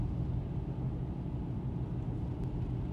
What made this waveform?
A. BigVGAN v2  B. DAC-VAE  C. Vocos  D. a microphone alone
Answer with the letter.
D